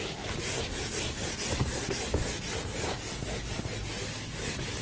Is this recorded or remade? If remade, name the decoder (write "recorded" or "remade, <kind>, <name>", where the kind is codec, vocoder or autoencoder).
recorded